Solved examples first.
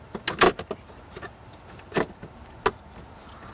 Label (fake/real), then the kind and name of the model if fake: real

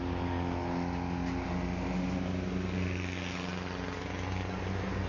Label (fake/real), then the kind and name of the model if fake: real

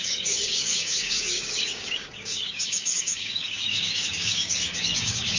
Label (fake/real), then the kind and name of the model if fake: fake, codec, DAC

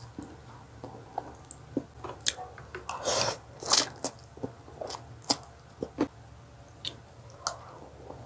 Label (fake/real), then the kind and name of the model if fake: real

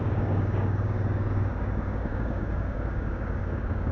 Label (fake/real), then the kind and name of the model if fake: fake, codec, DAC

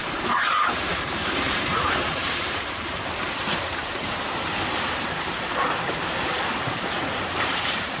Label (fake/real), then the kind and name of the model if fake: fake, vocoder, BigVGAN v2